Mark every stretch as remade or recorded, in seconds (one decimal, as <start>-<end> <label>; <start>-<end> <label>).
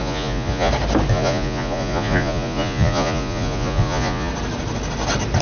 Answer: 0.0-0.7 remade; 0.7-1.1 recorded; 1.1-4.3 remade; 4.3-5.4 recorded